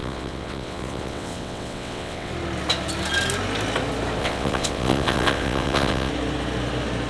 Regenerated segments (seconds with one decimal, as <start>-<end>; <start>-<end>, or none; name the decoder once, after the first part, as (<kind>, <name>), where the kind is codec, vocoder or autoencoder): 0.0-2.3 (vocoder, WaveNeXt); 4.2-6.1